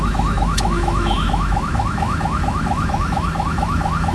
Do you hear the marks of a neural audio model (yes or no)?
yes